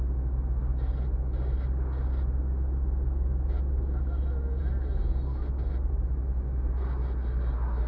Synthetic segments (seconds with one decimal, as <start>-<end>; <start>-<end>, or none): none